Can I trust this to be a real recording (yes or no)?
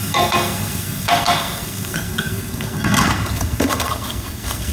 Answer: no